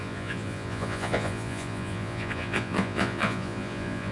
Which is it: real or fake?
fake